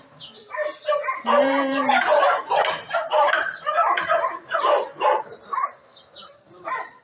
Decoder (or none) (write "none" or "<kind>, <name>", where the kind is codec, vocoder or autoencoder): vocoder, BigVGAN v2